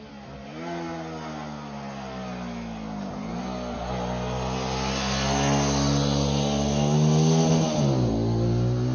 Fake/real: real